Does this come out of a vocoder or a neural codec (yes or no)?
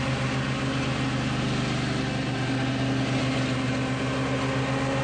no